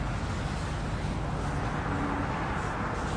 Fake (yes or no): no